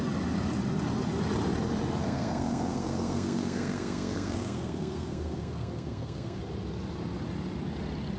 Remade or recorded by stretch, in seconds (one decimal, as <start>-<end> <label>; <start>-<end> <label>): 0.0-2.0 recorded; 2.0-6.4 remade; 6.4-8.2 recorded